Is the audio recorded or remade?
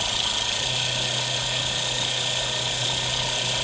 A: remade